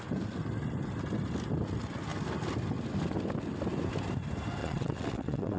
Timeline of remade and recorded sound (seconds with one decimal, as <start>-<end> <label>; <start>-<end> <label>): 0.0-4.6 recorded; 4.6-5.6 remade

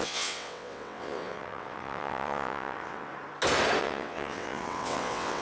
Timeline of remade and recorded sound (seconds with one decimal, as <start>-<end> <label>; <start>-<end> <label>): 0.0-3.1 remade; 3.1-3.8 recorded; 3.8-5.4 remade

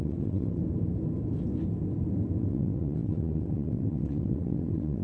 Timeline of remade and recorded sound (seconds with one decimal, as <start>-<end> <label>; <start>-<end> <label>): 0.0-0.6 remade; 0.6-2.4 recorded; 2.4-5.0 remade